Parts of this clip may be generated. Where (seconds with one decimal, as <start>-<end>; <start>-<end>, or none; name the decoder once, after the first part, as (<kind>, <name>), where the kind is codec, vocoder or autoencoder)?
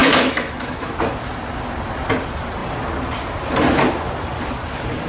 0.0-0.9 (autoencoder, DAC-VAE)